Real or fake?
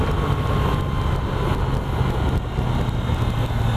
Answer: real